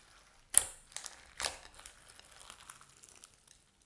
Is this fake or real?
real